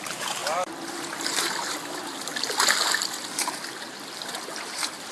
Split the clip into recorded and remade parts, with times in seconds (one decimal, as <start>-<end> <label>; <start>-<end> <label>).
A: 0.0-0.4 remade; 0.4-0.9 recorded; 0.9-2.3 remade; 2.3-3.9 recorded; 3.9-5.1 remade